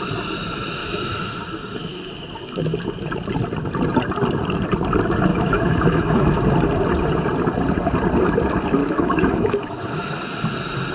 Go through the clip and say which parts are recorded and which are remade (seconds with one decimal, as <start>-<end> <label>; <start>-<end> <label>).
0.0-0.8 recorded; 0.8-1.4 remade; 1.4-1.8 recorded; 1.8-2.4 remade; 2.4-5.3 recorded; 5.3-6.4 remade; 6.4-8.8 recorded; 8.8-10.2 remade; 10.2-10.9 recorded